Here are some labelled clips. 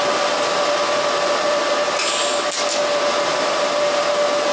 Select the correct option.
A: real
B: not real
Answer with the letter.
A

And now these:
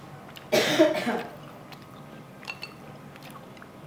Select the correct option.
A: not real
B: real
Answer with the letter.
B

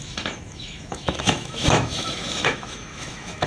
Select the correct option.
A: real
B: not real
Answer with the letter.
B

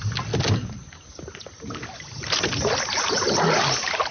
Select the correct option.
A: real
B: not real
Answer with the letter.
A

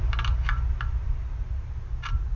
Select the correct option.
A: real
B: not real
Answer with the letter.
A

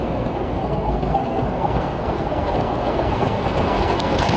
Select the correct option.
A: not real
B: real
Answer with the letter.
A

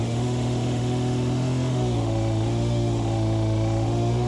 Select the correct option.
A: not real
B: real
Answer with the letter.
A